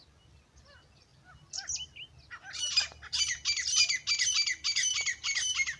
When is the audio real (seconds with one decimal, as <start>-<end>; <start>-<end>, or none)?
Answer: 0.0-4.8

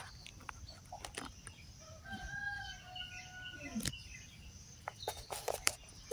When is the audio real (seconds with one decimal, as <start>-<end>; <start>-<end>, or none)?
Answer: 0.0-4.1

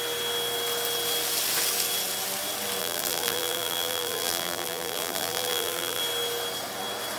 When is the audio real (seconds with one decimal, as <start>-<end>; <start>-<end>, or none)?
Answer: 0.0-2.8; 6.0-7.2

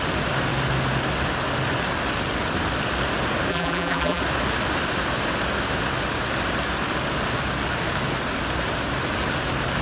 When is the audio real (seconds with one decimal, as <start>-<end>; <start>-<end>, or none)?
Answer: 0.0-3.5; 4.2-9.8

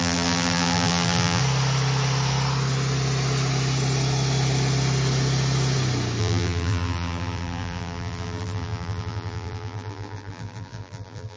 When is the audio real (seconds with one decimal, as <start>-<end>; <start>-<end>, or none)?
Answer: 1.4-6.2

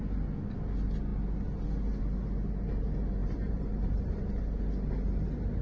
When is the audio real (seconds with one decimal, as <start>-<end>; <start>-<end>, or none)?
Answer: 0.0-3.2; 4.4-5.6

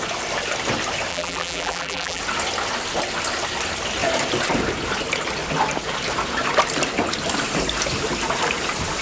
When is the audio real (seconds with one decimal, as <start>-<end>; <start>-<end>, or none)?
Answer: 0.0-1.1; 2.2-9.0

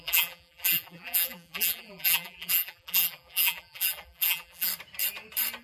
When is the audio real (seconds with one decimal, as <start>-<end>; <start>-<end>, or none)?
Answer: 4.7-5.6